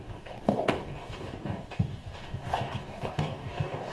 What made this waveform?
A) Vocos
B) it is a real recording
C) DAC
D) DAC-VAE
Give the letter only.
C